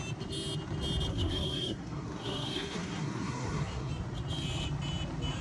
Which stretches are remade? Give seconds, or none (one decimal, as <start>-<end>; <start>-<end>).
1.1-3.9